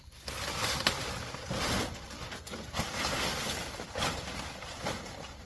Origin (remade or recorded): recorded